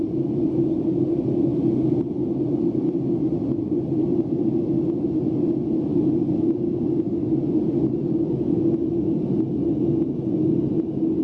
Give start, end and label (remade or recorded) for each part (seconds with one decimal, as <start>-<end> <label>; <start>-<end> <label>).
0.0-11.2 recorded